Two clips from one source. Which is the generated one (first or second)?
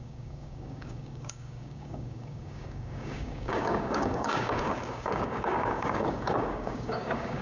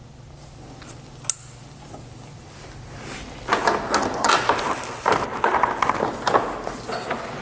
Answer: first